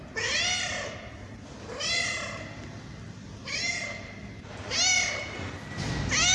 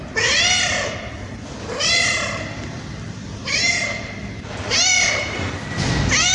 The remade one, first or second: second